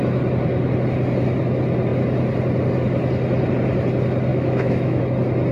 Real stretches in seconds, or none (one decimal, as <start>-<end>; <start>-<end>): 0.0-4.3; 5.0-5.5